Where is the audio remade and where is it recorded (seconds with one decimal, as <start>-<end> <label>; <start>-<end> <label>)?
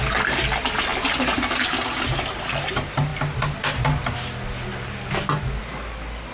0.0-6.3 recorded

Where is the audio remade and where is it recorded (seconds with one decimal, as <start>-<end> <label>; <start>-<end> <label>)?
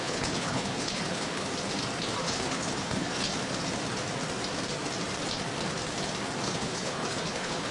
0.0-1.5 remade; 1.5-2.2 recorded; 2.2-3.3 remade; 3.3-6.4 recorded; 6.4-7.7 remade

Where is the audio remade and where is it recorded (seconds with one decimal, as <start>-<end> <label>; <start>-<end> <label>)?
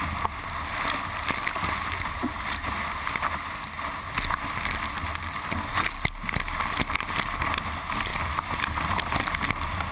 0.0-9.9 recorded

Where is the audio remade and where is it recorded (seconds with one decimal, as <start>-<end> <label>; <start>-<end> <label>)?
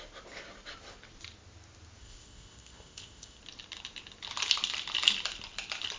0.0-2.0 recorded; 2.0-3.4 remade; 3.4-6.0 recorded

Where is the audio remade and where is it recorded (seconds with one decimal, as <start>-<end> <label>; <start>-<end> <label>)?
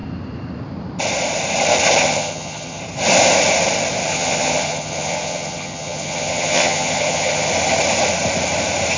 0.0-2.0 recorded; 2.0-2.8 remade; 2.8-4.1 recorded; 4.1-7.5 remade; 7.5-9.0 recorded